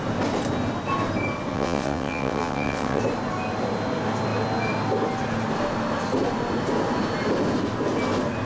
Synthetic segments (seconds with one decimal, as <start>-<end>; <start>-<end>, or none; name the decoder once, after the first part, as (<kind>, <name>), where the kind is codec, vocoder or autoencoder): 1.5-3.0 (vocoder, WaveNeXt)